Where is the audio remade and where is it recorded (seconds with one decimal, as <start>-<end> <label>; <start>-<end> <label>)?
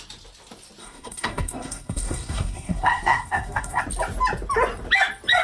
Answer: 0.0-0.8 recorded; 0.8-3.8 remade; 3.8-5.4 recorded